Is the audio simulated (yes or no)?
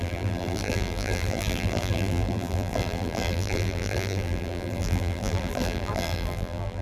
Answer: yes